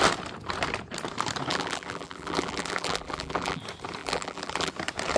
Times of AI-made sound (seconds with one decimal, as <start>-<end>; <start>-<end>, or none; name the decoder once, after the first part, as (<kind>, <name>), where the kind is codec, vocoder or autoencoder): 1.5-3.6 (vocoder, BigVGAN v2); 4.0-4.7